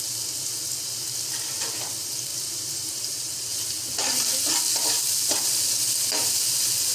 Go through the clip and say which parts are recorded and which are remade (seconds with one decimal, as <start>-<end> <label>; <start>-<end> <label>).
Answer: 0.0-2.3 recorded; 2.3-3.7 remade; 3.7-6.9 recorded